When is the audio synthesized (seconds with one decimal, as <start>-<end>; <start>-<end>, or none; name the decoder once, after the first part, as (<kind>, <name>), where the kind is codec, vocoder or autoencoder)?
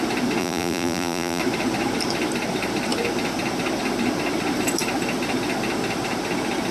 0.4-1.4 (vocoder, BigVGAN v2)